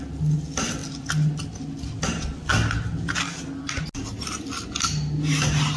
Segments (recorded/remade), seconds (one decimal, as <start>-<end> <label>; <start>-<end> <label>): 0.0-5.8 recorded